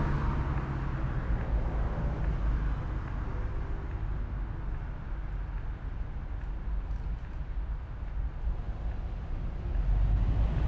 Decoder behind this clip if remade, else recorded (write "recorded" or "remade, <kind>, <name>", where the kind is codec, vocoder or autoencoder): recorded